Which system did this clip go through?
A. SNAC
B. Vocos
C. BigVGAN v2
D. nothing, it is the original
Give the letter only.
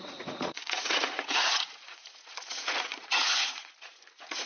B